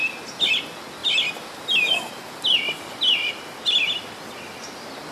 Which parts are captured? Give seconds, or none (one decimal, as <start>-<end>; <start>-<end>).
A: 0.0-5.1